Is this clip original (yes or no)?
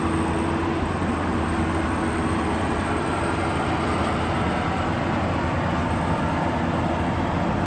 yes